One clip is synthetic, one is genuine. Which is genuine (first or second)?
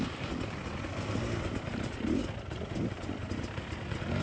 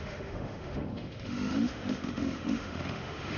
first